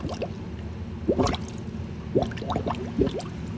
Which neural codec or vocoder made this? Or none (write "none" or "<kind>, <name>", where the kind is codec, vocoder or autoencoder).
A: none